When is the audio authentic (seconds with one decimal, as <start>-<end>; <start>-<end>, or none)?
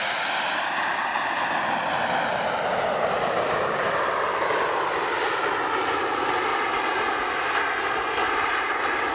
0.0-9.1